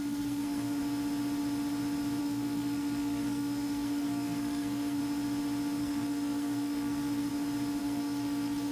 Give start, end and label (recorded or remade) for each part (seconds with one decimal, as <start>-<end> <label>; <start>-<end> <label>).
0.0-0.8 remade; 0.8-2.2 recorded; 2.2-5.0 remade; 5.0-5.8 recorded; 5.8-7.3 remade; 7.3-7.8 recorded; 7.8-8.7 remade